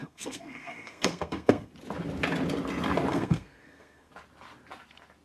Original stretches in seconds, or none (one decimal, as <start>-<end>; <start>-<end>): 1.7-3.1; 4.1-5.2

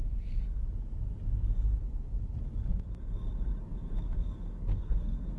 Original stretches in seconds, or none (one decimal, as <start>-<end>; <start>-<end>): 0.0-4.7

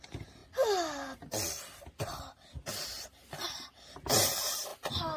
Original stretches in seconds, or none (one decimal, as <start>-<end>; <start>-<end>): 0.4-3.0; 4.7-5.2

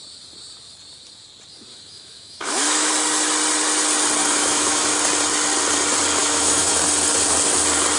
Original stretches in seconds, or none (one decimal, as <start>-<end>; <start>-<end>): 0.0-1.7; 2.9-4.2; 4.9-6.2; 6.7-8.0

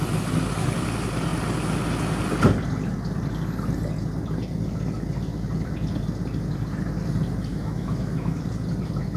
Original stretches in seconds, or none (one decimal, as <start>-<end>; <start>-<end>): 0.0-7.5; 8.4-9.2

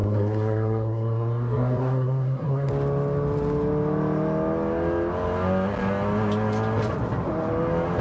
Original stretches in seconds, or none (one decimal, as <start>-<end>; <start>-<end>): 2.7-8.0

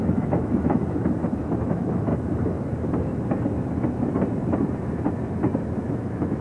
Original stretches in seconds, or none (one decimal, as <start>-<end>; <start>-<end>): 0.8-1.4; 2.1-5.9